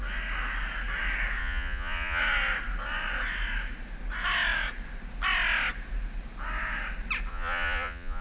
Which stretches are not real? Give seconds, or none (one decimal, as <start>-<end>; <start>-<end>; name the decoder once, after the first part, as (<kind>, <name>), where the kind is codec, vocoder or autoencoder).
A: 1.4-2.2 (vocoder, Vocos); 7.3-8.2